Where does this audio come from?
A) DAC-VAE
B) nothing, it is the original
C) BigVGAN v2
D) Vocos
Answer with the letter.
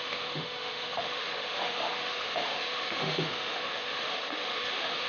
A